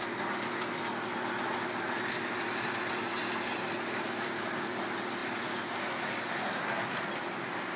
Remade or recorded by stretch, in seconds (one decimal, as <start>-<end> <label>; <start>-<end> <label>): 0.0-7.8 recorded